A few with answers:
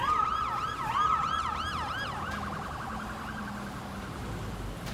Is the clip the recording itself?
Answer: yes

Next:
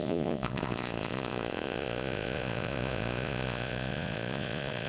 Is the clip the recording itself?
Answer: no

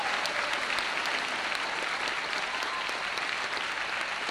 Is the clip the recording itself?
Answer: yes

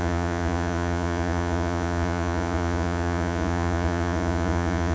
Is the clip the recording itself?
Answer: no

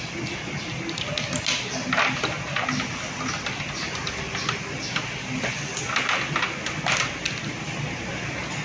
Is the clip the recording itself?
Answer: yes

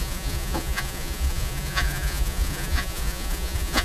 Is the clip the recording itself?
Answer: no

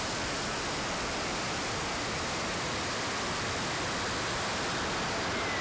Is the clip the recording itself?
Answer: yes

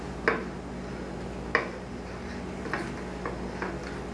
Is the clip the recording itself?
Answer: yes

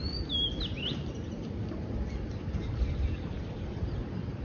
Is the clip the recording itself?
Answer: yes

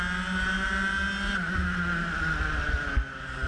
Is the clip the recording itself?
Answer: yes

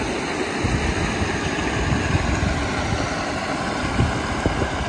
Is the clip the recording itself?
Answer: yes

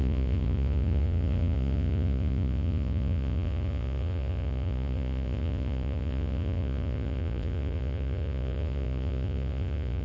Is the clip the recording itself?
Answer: no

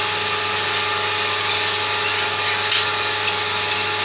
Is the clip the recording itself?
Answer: yes